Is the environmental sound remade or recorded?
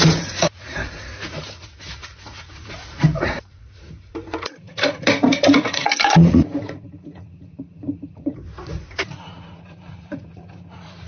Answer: remade